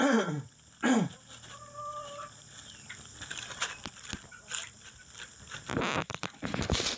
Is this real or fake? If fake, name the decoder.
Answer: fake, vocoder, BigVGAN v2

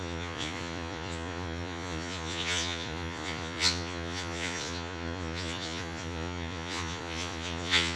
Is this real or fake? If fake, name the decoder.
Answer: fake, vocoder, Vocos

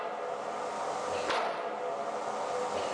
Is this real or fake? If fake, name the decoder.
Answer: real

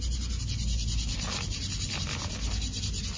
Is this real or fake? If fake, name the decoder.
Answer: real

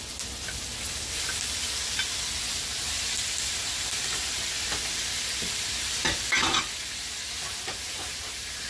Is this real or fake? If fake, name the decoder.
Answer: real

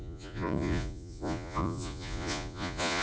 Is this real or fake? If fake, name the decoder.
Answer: fake, vocoder, Vocos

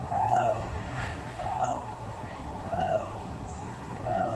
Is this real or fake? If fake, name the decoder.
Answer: fake, codec, SNAC